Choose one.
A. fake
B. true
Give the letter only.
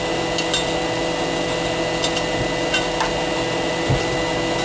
B